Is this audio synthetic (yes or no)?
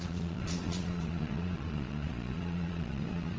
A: yes